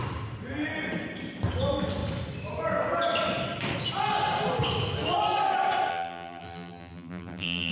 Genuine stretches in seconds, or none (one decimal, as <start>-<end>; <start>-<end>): 0.0-5.9